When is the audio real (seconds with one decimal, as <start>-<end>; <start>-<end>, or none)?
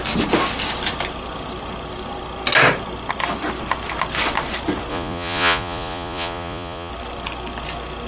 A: 0.0-4.9; 6.9-8.1